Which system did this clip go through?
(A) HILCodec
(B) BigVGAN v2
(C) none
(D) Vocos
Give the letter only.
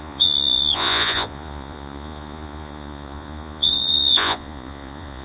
D